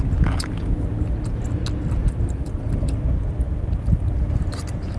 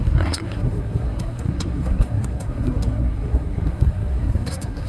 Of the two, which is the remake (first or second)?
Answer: second